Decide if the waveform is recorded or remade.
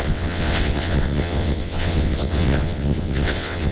remade